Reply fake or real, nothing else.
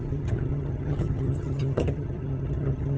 fake